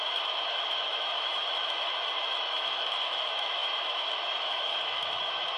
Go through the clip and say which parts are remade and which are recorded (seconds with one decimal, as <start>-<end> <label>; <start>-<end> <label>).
0.0-5.6 remade